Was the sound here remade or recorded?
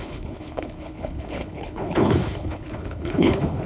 remade